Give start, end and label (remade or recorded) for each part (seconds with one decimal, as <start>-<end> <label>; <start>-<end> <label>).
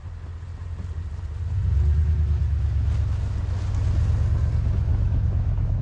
0.0-4.9 recorded; 4.9-5.8 remade